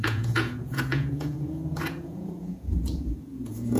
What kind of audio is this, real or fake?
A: fake